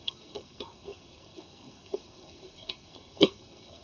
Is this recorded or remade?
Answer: remade